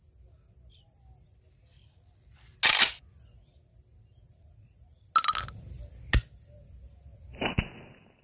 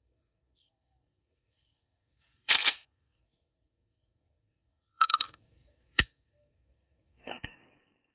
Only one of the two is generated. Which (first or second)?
second